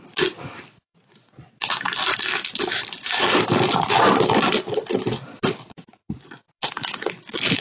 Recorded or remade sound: recorded